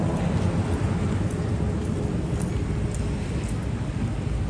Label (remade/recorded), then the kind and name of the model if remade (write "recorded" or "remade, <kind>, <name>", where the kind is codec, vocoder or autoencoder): recorded